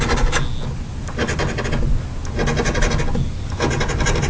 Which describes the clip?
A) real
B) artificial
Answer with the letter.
A